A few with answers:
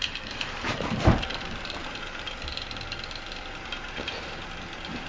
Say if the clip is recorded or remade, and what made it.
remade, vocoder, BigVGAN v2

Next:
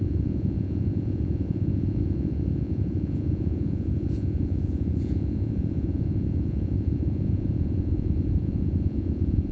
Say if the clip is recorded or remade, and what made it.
remade, vocoder, Vocos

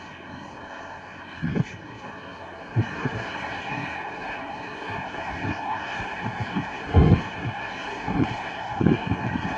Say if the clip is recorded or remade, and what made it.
remade, codec, SNAC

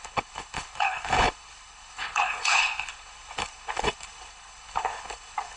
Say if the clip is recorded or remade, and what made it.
remade, codec, HILCodec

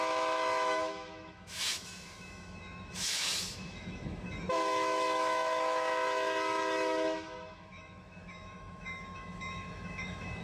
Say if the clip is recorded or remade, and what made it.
remade, autoencoder, DAC-VAE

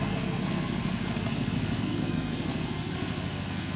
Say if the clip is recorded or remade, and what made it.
remade, codec, SNAC